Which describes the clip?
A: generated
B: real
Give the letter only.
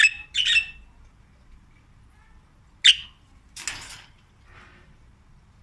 B